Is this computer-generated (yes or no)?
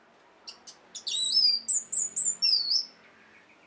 no